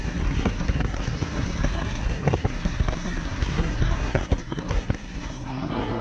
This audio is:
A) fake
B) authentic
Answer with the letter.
A